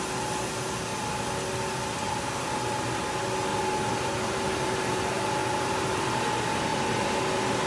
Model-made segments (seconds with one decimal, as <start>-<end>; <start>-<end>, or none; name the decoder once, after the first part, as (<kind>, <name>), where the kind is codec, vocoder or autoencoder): 3.5-5.0 (vocoder, BigVGAN v2); 5.4-6.0